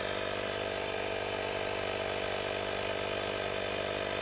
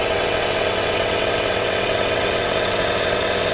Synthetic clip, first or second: second